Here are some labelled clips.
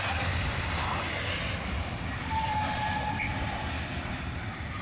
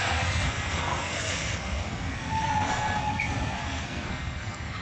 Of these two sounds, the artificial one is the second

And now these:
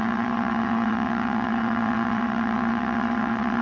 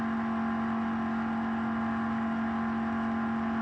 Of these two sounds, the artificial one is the first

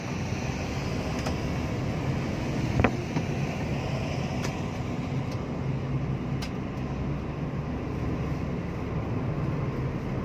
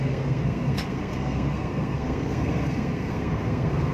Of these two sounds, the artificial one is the second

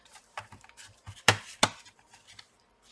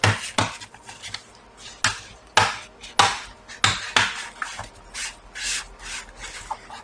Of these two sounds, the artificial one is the first